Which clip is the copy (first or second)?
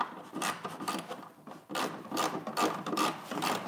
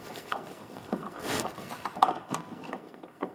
second